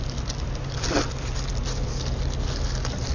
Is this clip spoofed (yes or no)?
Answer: no